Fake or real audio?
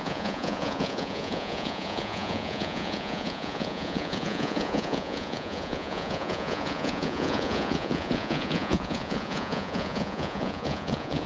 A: fake